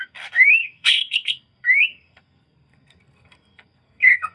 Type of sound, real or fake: fake